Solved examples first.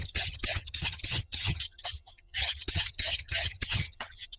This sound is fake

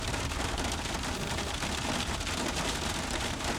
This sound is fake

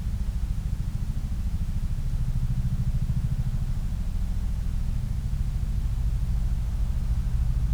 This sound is real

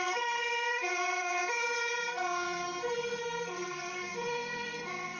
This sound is fake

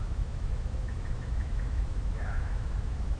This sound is fake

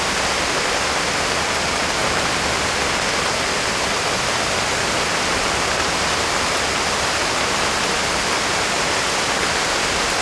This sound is real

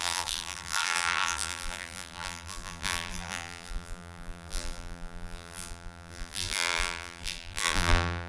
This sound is fake